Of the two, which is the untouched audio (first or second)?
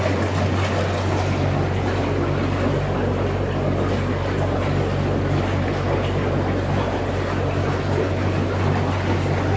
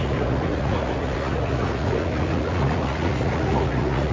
first